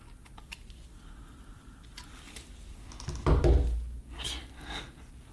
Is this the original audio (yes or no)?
yes